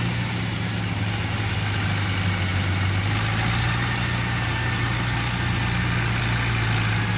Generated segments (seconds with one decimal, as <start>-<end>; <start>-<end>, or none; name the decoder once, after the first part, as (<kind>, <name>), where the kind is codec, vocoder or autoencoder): none